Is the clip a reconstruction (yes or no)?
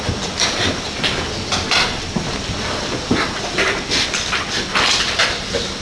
no